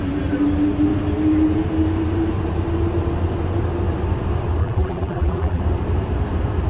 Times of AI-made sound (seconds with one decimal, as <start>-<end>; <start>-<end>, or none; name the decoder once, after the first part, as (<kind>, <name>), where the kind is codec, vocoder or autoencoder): 4.6-5.6 (vocoder, BigVGAN v2)